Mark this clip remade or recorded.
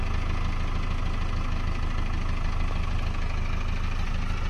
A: recorded